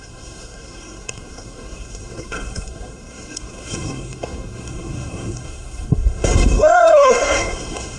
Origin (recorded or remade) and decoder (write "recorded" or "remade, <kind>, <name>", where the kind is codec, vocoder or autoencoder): remade, codec, SNAC